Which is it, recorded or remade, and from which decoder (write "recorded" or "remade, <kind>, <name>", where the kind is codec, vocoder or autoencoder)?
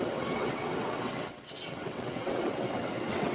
remade, vocoder, WaveNeXt